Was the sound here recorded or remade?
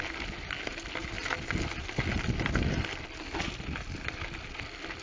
recorded